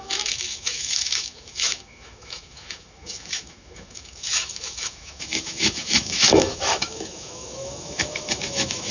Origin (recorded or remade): remade